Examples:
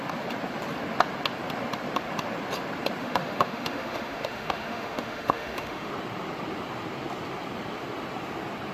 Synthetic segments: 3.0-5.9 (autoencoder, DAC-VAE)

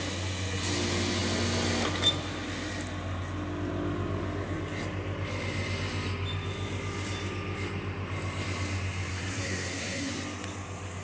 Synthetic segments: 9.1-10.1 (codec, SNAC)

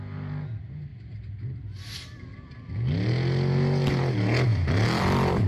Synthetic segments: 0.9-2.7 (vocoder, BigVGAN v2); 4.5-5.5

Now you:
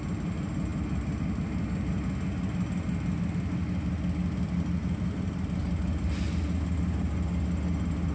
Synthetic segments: none

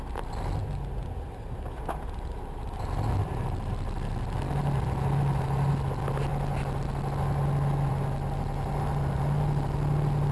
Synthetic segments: none

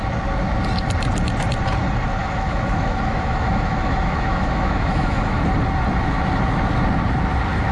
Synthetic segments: 2.2-5.4 (autoencoder, DAC-VAE)

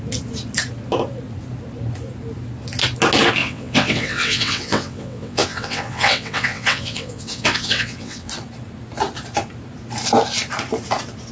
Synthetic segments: 3.4-8.3 (vocoder, WaveNeXt)